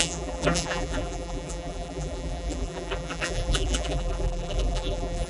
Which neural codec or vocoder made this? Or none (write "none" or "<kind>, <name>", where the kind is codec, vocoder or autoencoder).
vocoder, BigVGAN v2